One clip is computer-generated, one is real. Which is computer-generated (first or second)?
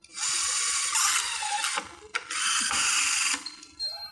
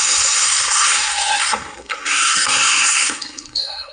second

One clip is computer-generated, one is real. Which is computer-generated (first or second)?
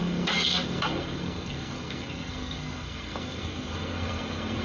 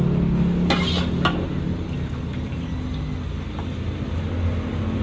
first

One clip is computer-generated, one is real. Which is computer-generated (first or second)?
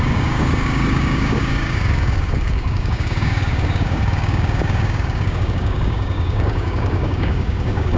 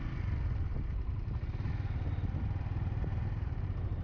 first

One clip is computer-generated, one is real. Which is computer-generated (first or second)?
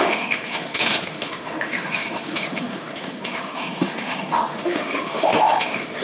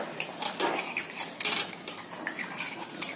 first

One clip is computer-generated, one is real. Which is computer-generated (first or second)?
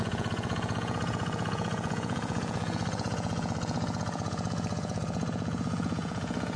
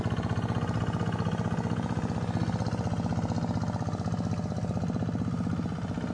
first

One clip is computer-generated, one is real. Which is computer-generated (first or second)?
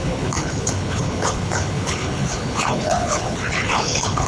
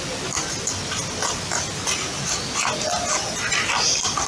first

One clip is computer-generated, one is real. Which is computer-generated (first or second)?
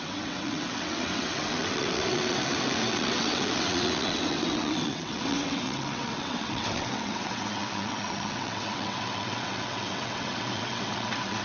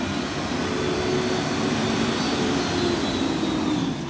first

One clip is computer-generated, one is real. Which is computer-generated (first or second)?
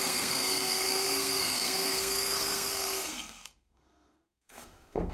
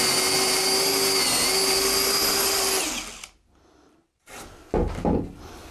first